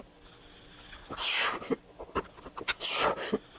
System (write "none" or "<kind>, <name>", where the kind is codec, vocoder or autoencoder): none